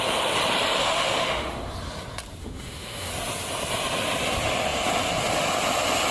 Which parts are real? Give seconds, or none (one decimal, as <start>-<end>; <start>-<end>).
0.0-0.8; 1.7-2.4; 3.1-6.1